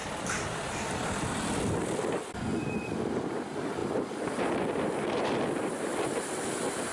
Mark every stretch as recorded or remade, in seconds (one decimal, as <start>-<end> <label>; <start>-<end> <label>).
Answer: 0.0-6.9 remade